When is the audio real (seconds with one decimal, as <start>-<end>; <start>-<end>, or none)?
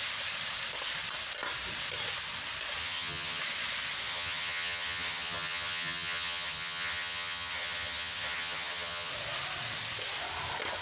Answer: 0.0-2.8; 3.4-4.1; 9.1-10.8